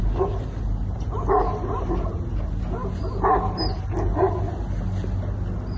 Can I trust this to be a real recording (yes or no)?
yes